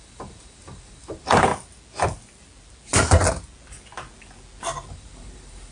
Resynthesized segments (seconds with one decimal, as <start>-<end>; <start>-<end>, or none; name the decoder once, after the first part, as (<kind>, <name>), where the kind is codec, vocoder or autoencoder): 0.0-1.5 (vocoder, BigVGAN v2); 4.9-5.7